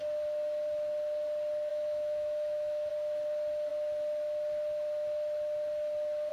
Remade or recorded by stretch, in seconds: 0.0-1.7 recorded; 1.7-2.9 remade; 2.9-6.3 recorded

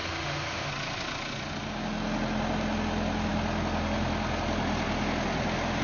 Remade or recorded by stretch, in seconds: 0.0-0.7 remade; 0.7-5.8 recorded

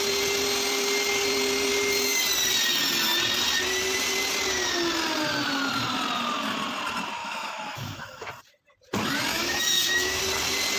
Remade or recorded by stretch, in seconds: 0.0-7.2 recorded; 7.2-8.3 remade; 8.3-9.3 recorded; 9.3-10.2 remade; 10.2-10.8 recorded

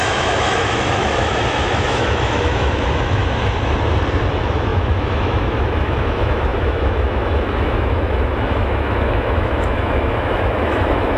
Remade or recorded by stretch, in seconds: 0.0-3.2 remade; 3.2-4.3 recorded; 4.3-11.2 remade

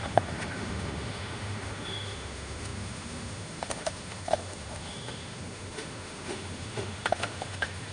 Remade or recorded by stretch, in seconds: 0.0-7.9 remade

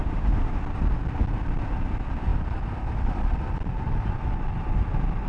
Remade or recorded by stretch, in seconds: 0.0-0.6 remade; 0.6-5.3 recorded

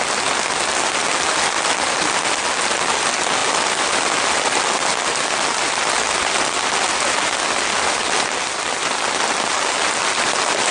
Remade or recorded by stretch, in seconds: 0.0-10.7 recorded